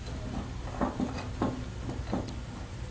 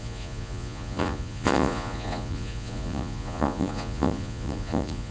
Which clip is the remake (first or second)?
second